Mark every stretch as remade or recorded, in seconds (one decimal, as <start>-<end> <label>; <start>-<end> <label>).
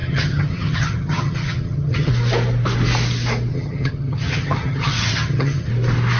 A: 0.0-2.1 remade; 2.1-3.5 recorded; 3.5-5.7 remade; 5.7-6.2 recorded